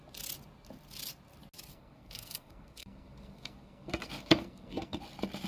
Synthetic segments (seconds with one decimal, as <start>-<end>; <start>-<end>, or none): 1.7-5.0